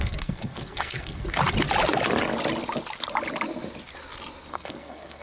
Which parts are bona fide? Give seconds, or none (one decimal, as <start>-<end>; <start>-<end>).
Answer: 1.4-4.5